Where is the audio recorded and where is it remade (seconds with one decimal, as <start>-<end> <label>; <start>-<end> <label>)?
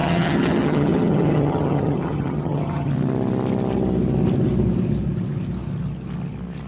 0.0-2.9 remade; 2.9-6.7 recorded